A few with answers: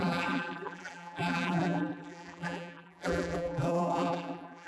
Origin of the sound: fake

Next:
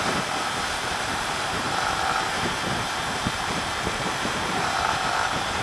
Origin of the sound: fake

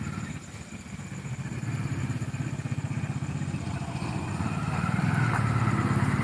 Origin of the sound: real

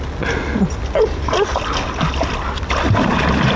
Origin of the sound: real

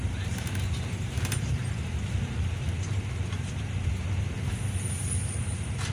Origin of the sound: fake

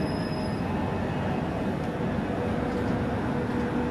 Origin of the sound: real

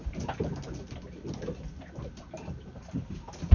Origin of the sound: real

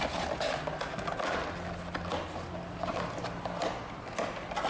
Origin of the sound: real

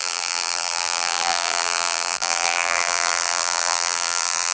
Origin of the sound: fake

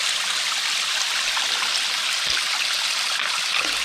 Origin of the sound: real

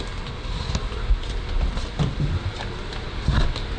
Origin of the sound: real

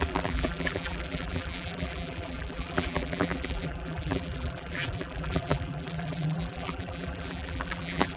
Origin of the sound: fake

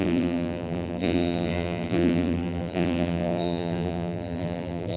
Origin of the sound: fake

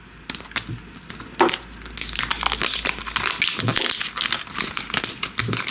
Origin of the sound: real